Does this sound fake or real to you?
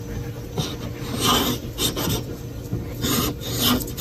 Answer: real